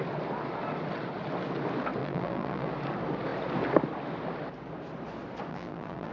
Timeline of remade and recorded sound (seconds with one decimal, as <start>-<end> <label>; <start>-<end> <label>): 0.0-2.0 recorded; 2.0-2.7 remade; 2.7-5.5 recorded; 5.5-6.1 remade